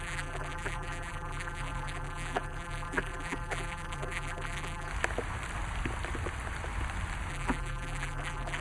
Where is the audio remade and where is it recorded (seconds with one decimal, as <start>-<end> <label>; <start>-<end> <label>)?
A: 0.0-4.9 remade; 4.9-7.3 recorded; 7.3-8.6 remade